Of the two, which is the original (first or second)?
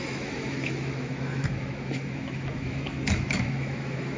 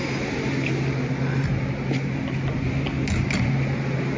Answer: second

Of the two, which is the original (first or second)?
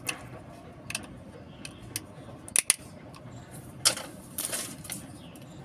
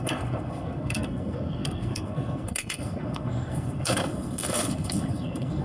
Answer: first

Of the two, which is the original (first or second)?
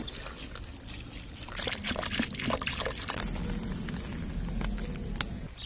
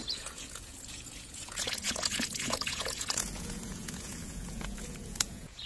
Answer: first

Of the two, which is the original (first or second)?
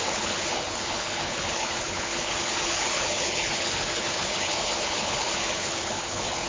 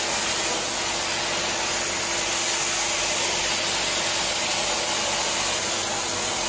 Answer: second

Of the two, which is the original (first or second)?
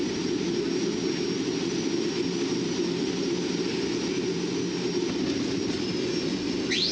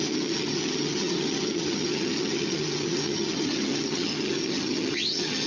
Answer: first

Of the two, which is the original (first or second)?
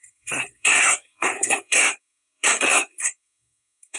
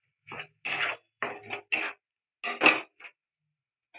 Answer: second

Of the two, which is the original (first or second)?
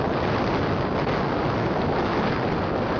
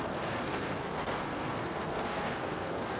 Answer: first